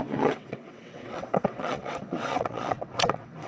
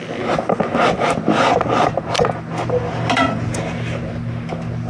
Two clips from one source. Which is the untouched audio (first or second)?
second